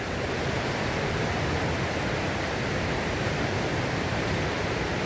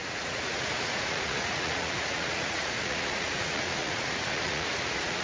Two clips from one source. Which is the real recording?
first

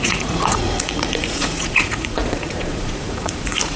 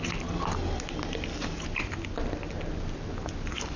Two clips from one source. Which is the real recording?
second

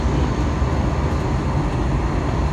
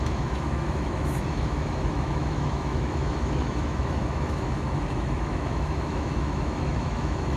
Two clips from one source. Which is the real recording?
first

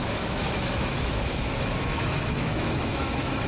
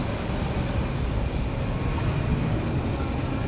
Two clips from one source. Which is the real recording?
second